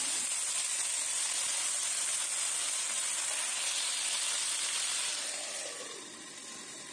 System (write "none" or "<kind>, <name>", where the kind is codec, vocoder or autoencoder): none